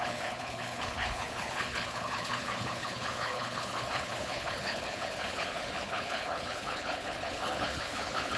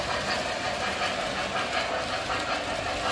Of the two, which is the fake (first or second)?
first